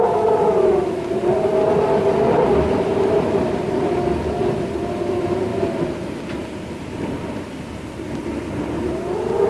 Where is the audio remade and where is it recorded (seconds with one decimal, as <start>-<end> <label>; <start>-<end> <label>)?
0.0-9.5 recorded